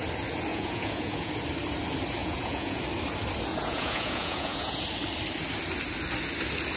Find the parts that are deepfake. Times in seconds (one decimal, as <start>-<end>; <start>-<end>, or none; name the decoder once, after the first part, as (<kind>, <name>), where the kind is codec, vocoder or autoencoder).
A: 0.5-1.3 (vocoder, Vocos); 2.2-2.8; 3.5-4.8